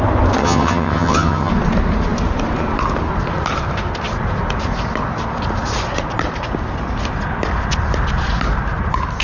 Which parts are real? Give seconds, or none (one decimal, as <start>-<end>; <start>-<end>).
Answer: 0.0-0.4; 1.5-9.2